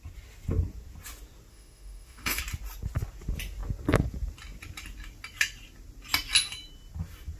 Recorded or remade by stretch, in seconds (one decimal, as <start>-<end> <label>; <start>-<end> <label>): 0.0-1.5 recorded; 1.5-2.4 remade; 2.4-7.4 recorded